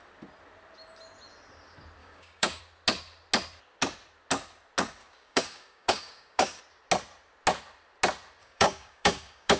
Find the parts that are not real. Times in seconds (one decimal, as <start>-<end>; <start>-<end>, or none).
2.0-2.6; 5.0-6.6; 8.4-9.6